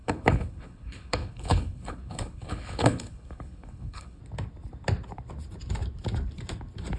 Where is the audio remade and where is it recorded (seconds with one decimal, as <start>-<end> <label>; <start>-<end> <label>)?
0.0-4.2 remade; 4.2-7.0 recorded